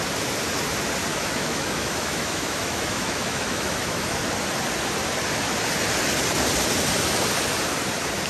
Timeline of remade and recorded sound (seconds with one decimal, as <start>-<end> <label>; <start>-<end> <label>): 0.0-1.1 recorded; 1.1-4.2 remade; 4.2-8.3 recorded